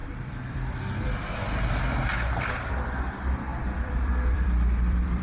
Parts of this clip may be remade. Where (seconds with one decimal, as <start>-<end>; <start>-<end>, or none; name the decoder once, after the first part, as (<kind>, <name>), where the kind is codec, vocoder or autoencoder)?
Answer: 0.0-3.1 (vocoder, BigVGAN v2); 3.5-5.2